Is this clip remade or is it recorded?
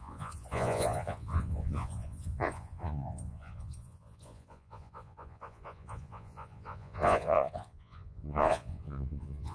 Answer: remade